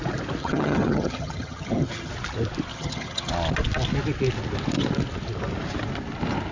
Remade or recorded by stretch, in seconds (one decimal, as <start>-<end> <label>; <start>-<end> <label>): 0.0-0.4 recorded; 0.4-2.1 remade; 2.1-2.7 recorded; 2.7-3.3 remade; 3.3-6.5 recorded